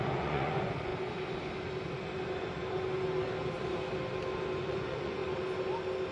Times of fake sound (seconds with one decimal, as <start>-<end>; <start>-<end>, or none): 0.0-0.9; 4.6-5.2